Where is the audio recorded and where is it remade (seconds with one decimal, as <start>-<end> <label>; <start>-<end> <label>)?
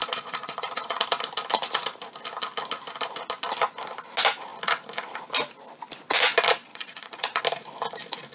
0.0-1.0 remade; 1.0-6.7 recorded; 6.7-7.4 remade; 7.4-8.3 recorded